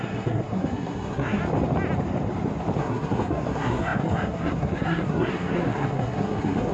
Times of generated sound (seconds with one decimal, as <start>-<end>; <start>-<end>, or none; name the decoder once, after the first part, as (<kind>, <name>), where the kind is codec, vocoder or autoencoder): 0.0-1.4 (codec, SNAC); 2.8-6.7